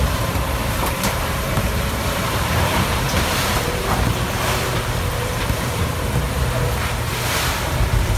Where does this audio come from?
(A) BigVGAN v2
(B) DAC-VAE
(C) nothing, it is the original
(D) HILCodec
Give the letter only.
A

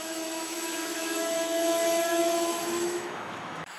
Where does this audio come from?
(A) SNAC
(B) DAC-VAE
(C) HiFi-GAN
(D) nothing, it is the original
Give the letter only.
B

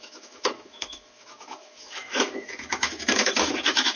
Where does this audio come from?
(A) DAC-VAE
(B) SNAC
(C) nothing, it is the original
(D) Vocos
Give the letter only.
A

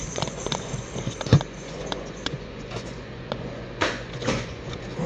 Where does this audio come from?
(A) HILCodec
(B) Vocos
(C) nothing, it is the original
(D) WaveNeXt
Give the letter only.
B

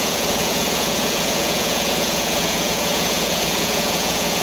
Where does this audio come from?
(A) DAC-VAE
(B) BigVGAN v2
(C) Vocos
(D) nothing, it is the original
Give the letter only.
C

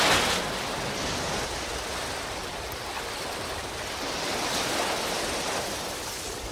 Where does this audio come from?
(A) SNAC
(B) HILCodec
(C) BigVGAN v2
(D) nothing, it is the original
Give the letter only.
D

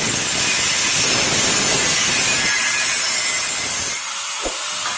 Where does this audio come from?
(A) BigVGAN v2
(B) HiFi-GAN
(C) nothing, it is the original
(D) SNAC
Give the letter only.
C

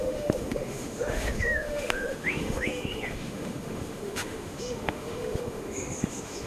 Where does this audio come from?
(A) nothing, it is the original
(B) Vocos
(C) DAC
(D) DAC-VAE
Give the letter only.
D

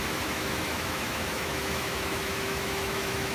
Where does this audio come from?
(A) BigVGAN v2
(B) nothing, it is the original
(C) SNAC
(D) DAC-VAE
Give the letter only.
D